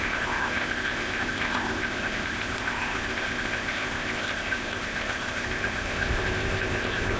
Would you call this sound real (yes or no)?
no